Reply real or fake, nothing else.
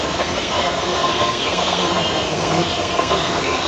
fake